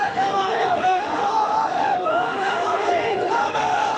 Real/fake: fake